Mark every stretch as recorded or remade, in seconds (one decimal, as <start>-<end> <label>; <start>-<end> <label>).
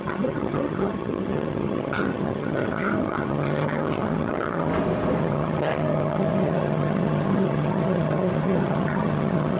0.0-4.7 remade; 4.7-5.2 recorded; 5.2-9.6 remade